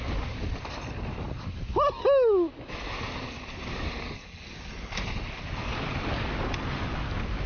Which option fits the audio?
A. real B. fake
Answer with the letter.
A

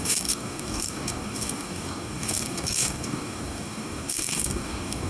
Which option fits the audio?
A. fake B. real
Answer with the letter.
A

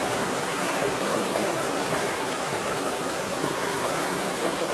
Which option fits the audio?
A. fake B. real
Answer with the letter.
A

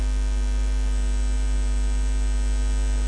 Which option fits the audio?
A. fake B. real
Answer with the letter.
B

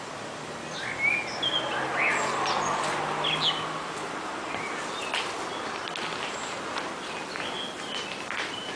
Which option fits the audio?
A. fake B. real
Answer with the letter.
B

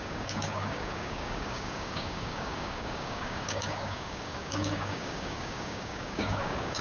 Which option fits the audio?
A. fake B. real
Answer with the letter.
A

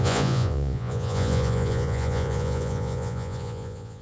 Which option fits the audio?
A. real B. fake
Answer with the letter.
B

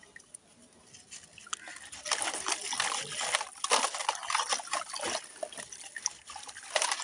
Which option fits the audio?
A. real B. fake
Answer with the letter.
A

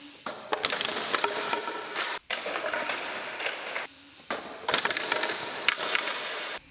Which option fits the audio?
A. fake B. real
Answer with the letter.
B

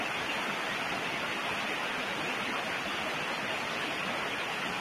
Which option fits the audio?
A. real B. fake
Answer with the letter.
A